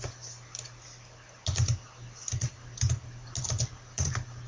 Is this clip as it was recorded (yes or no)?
yes